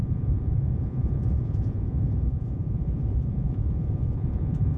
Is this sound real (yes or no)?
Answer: no